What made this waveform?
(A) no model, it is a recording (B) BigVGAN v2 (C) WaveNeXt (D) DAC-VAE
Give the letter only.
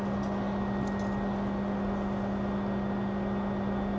A